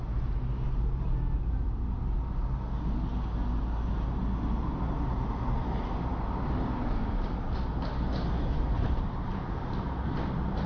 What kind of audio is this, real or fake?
real